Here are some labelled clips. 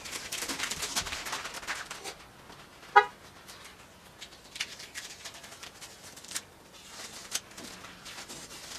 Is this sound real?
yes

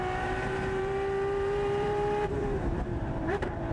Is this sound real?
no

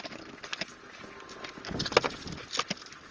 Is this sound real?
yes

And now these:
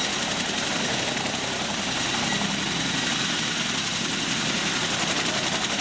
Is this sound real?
yes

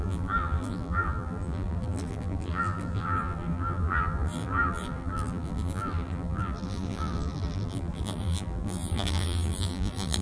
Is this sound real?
no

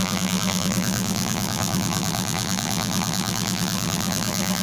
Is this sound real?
no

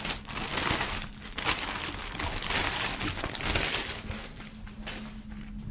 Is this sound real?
yes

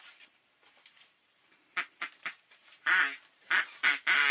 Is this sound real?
no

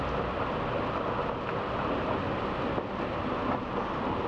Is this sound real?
yes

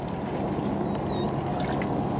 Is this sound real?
yes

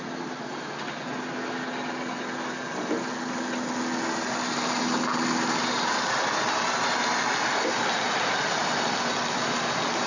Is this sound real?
yes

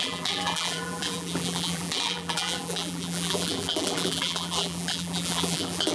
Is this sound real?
no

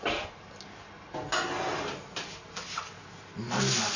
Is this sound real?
yes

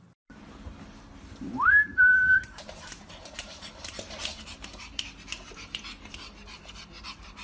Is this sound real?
no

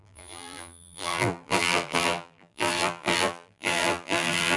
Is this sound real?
no